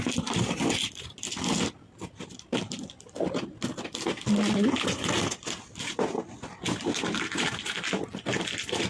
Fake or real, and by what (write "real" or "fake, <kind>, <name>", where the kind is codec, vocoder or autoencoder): real